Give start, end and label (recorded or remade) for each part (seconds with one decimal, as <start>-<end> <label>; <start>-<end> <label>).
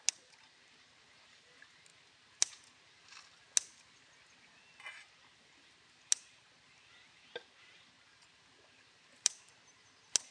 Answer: 0.0-10.3 recorded